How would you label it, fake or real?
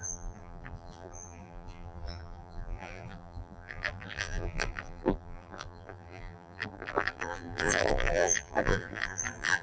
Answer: fake